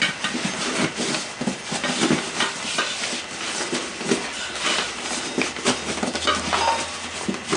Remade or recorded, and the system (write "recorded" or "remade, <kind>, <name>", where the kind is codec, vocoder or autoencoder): recorded